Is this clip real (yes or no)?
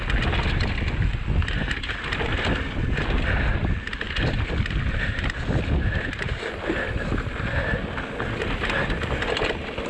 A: yes